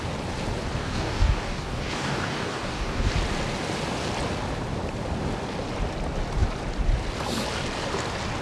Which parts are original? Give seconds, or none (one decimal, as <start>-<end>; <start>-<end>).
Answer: 0.0-0.8; 3.1-8.4